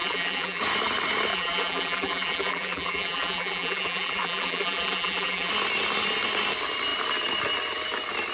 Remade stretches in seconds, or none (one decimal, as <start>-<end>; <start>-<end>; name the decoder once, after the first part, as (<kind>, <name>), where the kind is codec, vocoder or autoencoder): 0.0-0.6 (vocoder, BigVGAN v2); 1.3-5.5

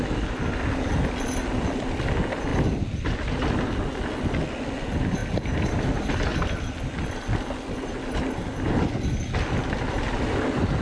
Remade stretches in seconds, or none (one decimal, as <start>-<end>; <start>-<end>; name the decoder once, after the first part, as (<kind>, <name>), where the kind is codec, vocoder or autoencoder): none

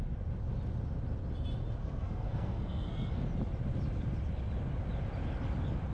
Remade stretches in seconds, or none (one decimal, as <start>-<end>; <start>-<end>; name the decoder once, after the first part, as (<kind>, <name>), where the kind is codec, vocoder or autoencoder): 1.8-3.2 (codec, SNAC)